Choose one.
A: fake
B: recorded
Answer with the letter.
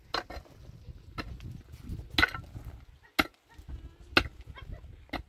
B